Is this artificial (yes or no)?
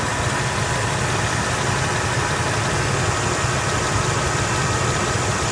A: no